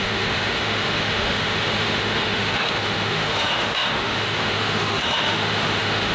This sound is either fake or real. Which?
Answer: fake